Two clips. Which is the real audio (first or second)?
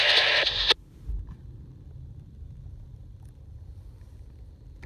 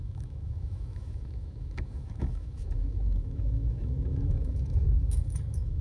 first